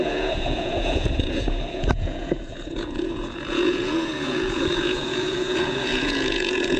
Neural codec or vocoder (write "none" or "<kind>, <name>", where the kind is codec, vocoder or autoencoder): vocoder, Vocos